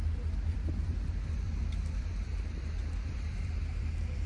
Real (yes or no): no